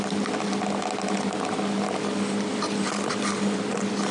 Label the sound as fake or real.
real